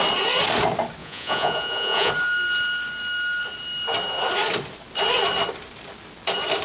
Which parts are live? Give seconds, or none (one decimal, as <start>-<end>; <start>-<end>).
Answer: 0.0-1.0; 2.1-6.6